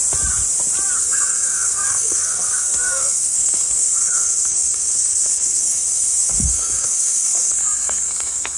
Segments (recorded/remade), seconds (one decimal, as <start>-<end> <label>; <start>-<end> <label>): 0.0-1.0 recorded; 1.0-8.6 remade